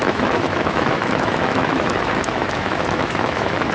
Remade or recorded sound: remade